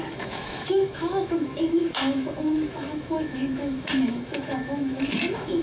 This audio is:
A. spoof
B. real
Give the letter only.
A